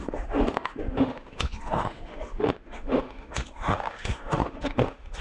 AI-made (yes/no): yes